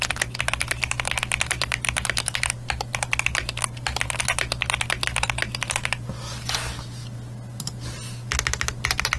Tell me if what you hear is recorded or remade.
recorded